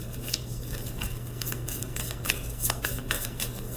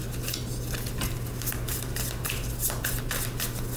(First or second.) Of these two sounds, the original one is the second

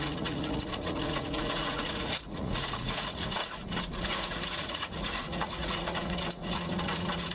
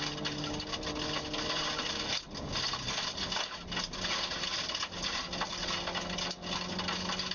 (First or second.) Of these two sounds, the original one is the second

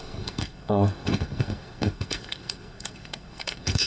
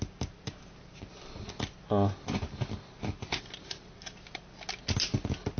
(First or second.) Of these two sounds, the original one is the second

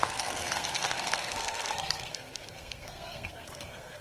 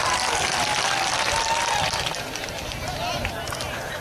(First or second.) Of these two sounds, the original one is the second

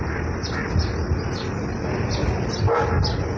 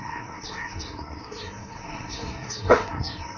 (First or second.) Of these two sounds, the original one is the first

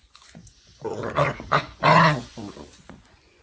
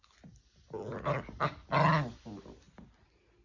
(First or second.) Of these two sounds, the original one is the second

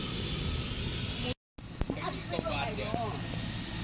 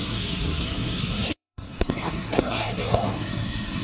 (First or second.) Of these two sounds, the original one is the first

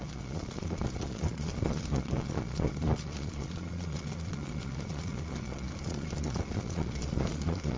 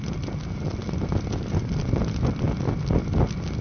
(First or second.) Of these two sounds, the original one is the second